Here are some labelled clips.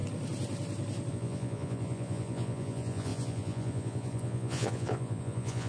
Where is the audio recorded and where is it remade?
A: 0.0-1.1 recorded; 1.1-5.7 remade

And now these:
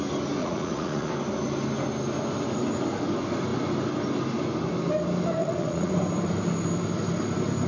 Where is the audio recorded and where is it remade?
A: 0.0-0.4 recorded; 0.4-1.1 remade; 1.1-5.4 recorded; 5.4-5.9 remade; 5.9-7.7 recorded

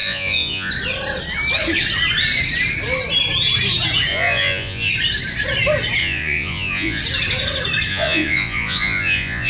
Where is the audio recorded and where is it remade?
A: 0.0-0.7 remade; 0.7-4.1 recorded; 4.1-4.9 remade; 4.9-6.0 recorded; 6.0-7.0 remade; 7.0-7.9 recorded; 7.9-9.5 remade

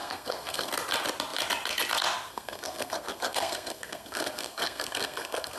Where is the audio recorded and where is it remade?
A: 0.0-0.7 remade; 0.7-2.3 recorded; 2.3-5.6 remade